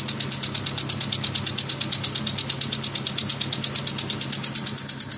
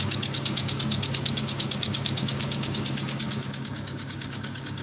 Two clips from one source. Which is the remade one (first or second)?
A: second